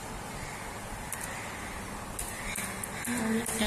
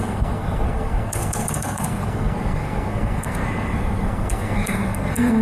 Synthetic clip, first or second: second